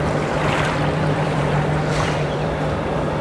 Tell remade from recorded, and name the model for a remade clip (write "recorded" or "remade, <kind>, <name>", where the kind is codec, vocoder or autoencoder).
remade, vocoder, BigVGAN v2